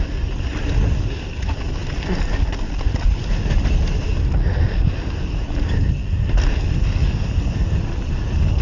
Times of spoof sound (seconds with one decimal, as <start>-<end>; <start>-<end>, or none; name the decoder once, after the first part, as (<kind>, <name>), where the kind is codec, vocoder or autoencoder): none